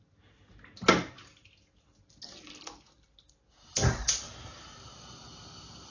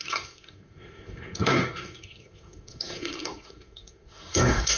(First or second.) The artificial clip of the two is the second